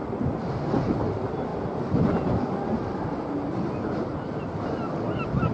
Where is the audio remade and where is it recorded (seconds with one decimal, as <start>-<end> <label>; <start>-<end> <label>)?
0.0-5.5 recorded